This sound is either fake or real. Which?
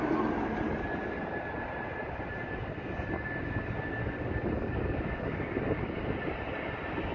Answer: real